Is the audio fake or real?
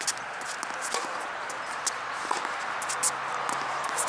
real